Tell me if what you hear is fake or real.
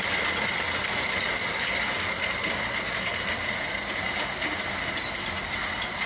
real